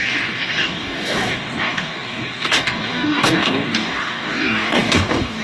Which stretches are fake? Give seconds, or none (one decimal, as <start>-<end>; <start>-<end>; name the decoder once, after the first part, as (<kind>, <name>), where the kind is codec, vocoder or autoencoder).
0.0-5.4 (codec, DAC)